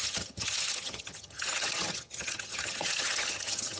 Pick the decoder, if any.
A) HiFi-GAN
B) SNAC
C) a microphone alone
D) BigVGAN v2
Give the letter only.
A